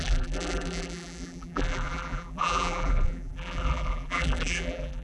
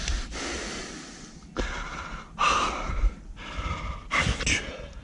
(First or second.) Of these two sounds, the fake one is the first